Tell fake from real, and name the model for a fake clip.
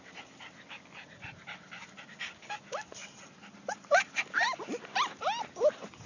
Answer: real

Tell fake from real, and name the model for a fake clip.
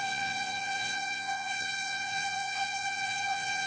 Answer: fake, vocoder, Vocos